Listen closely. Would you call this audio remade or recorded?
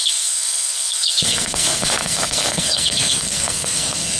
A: remade